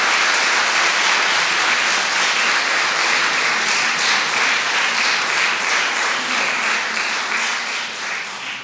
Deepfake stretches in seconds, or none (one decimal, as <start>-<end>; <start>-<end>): none